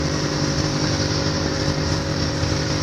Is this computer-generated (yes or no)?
yes